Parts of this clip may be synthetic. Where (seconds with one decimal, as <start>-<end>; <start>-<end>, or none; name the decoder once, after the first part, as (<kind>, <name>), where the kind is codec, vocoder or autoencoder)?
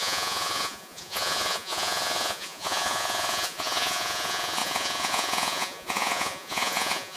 0.0-7.2 (vocoder, Vocos)